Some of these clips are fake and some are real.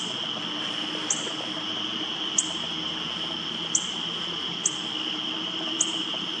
real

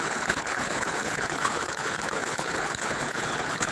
fake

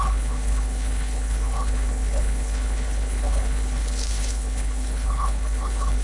fake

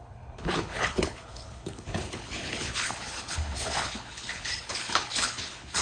fake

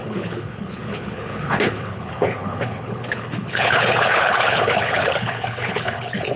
fake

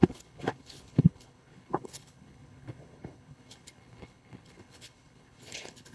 fake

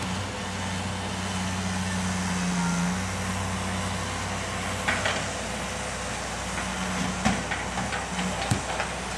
real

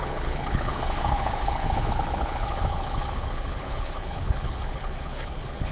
fake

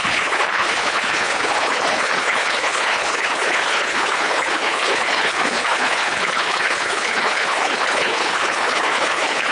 fake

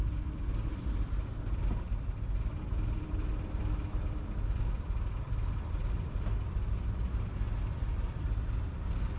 real